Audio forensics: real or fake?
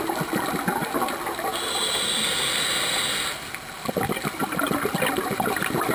real